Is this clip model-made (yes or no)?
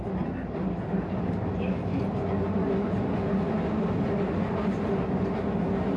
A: no